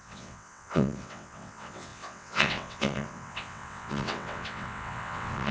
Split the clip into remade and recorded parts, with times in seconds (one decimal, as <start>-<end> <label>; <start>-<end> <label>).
0.0-5.5 remade